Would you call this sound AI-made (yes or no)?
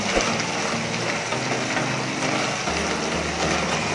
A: no